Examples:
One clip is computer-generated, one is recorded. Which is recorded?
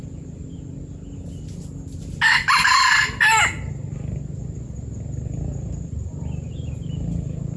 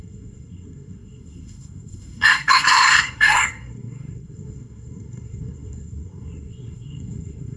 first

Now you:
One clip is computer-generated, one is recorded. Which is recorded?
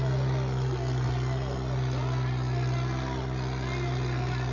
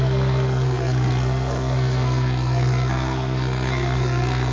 first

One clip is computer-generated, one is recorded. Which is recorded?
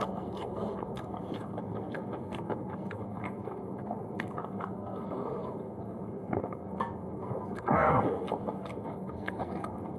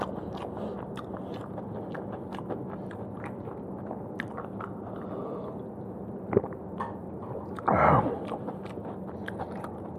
second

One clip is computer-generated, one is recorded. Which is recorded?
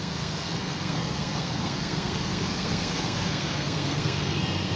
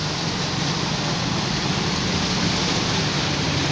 second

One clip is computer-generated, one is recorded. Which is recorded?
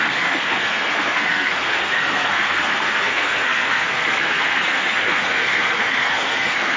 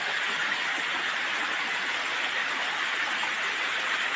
second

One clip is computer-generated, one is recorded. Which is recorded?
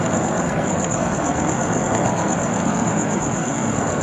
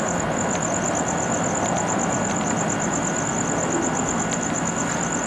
second